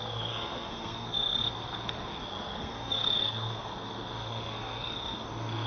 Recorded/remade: remade